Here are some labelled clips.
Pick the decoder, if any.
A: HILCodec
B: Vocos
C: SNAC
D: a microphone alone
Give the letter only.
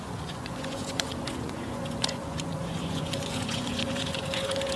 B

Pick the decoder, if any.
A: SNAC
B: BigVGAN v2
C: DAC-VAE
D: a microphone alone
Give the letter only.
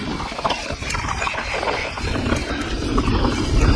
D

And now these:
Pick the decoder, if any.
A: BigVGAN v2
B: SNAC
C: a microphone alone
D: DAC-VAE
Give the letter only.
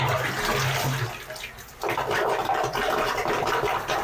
C